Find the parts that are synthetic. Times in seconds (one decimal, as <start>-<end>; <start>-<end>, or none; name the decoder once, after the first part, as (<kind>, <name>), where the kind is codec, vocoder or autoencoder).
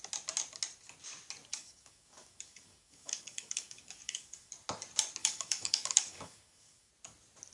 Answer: 1.5-4.5 (codec, DAC); 5.2-6.9